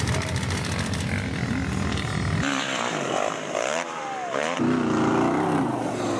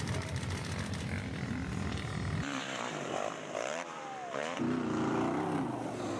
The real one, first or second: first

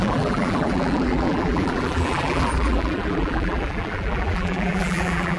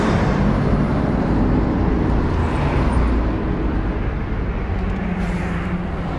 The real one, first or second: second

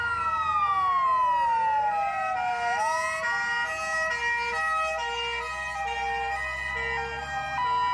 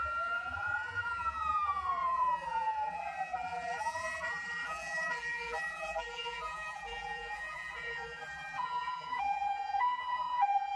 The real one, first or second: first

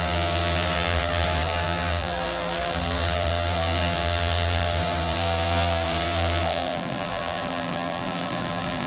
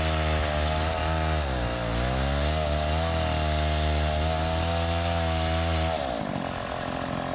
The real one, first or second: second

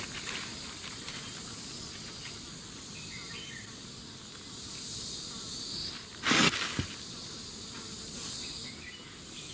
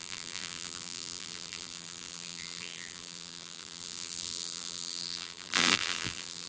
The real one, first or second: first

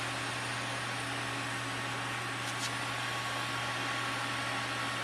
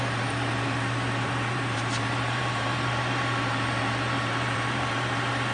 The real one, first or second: first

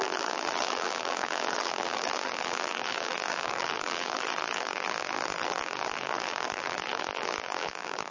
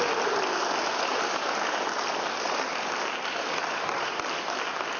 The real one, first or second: second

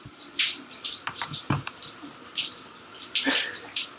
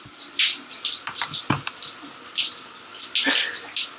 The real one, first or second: second